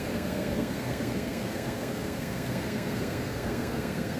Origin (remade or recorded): remade